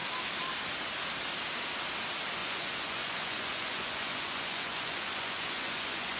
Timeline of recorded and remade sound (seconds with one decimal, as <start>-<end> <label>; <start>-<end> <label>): 0.0-2.4 recorded; 2.4-6.2 remade